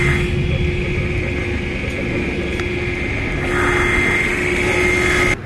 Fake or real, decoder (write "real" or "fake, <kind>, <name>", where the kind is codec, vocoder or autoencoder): real